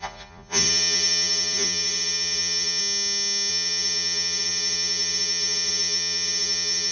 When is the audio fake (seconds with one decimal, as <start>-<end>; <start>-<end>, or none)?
0.0-2.8; 3.5-6.9